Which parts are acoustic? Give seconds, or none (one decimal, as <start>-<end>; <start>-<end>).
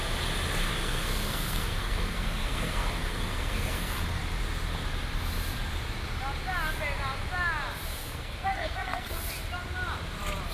0.0-0.7; 4.2-8.0; 9.2-10.5